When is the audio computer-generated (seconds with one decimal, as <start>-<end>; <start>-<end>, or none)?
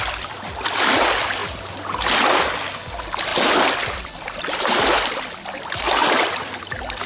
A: 0.0-1.4; 2.1-7.1